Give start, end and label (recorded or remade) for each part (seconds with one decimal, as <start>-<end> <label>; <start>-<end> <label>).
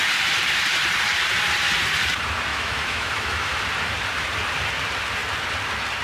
0.0-2.5 recorded; 2.5-3.6 remade; 3.6-6.0 recorded